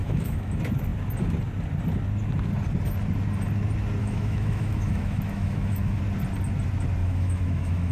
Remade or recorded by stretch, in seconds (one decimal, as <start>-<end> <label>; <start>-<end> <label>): 0.0-0.5 remade; 0.5-4.0 recorded; 4.0-6.0 remade; 6.0-7.0 recorded; 7.0-7.9 remade